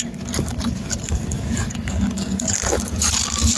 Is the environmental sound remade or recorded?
remade